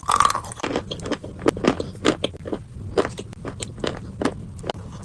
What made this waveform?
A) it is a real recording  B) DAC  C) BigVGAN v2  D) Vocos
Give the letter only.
A